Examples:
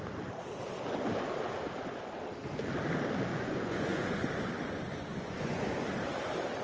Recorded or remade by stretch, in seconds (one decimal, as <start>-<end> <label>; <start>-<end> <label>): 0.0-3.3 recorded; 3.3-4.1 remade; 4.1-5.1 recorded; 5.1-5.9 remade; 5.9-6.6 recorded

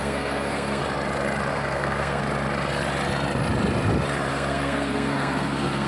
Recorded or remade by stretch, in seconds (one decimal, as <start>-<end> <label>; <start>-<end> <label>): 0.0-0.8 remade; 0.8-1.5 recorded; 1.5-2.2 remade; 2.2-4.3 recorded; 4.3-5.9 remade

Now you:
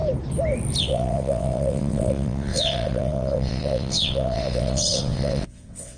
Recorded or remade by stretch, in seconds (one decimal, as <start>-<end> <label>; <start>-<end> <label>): 0.0-0.8 recorded; 0.8-6.0 remade

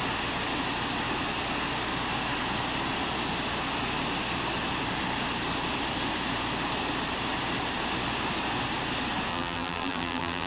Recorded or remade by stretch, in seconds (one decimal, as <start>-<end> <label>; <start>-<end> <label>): 0.0-9.3 recorded; 9.3-10.5 remade